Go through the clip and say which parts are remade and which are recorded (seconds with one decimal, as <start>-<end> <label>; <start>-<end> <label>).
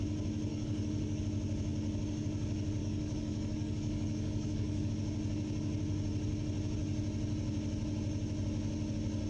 0.0-0.5 recorded; 0.5-1.2 remade; 1.2-2.8 recorded; 2.8-4.9 remade; 4.9-9.3 recorded